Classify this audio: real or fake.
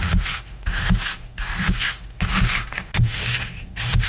fake